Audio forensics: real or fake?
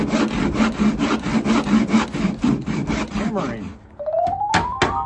real